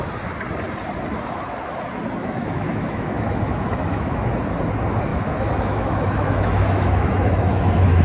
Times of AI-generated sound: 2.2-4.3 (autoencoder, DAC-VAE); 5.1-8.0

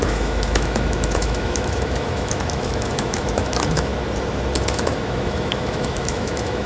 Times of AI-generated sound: 0.0-3.9 (autoencoder, DAC-VAE); 4.7-6.7